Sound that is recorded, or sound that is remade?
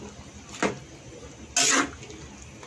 recorded